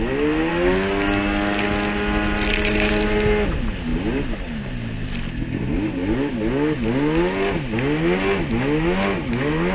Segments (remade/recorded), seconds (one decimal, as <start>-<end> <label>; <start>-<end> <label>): 0.0-9.7 recorded